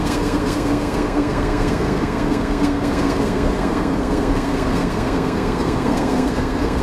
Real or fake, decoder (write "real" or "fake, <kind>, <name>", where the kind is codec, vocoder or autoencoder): fake, codec, SNAC